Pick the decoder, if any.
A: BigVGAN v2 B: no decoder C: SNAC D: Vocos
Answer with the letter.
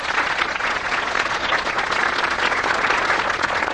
D